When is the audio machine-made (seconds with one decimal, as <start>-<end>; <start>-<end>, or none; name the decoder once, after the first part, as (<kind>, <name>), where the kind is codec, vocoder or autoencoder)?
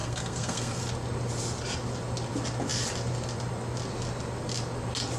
0.0-0.8 (codec, SNAC)